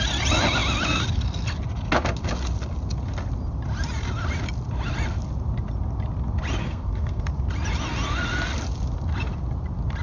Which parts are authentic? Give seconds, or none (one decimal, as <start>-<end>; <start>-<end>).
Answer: 0.0-6.6; 7.2-10.0